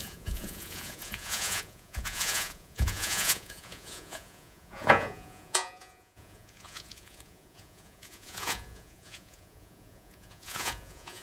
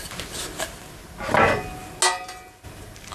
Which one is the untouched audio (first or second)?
second